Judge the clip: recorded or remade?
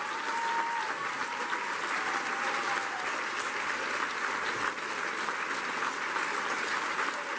recorded